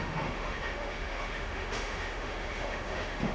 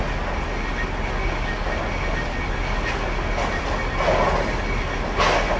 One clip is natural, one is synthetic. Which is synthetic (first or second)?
first